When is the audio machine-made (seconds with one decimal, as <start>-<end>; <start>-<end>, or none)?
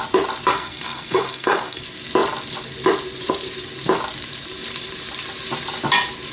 0.5-1.8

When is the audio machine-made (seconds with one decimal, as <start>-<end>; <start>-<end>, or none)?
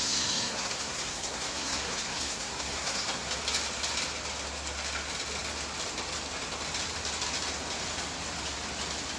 0.0-3.3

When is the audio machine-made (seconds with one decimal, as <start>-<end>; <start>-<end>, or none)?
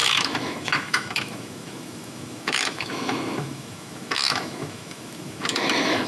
0.0-6.1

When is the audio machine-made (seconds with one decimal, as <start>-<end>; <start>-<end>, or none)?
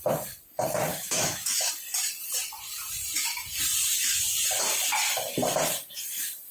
0.9-1.7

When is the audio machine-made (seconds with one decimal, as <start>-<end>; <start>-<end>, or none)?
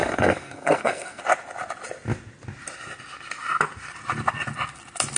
0.0-1.2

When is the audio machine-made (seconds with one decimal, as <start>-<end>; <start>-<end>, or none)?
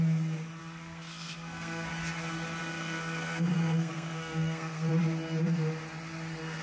0.6-1.9; 2.6-4.9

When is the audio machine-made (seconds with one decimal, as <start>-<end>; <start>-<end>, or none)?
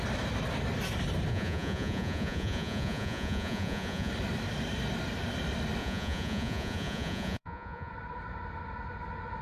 1.3-4.1; 5.8-7.9